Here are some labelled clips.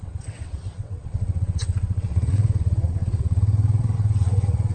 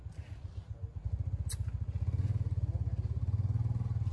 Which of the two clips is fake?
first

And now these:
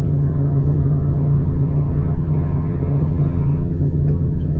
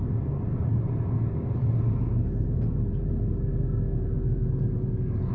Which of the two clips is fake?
first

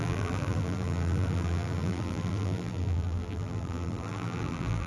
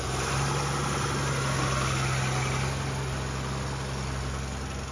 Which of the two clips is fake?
first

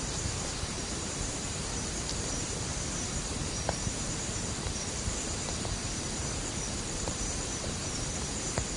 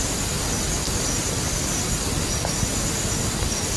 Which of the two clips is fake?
first